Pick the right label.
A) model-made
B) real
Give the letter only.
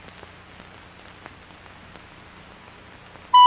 B